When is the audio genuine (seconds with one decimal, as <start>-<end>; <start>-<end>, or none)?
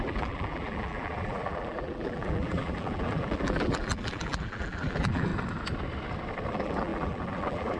5.3-6.5